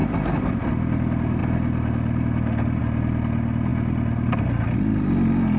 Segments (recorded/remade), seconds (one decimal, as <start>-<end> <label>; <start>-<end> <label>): 0.0-5.6 recorded